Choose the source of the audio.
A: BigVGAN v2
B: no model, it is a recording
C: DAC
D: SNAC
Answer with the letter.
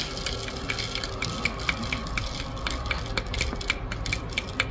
B